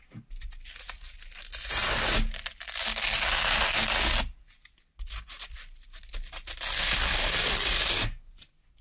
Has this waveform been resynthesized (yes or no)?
no